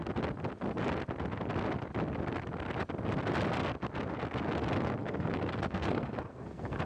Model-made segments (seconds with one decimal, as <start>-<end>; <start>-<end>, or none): 5.0-6.8